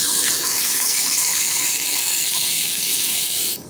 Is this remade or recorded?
remade